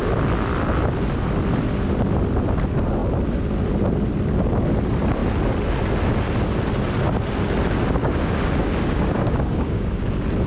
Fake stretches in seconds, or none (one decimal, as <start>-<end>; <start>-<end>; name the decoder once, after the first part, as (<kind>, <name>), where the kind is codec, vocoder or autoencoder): 8.0-10.1 (codec, DAC)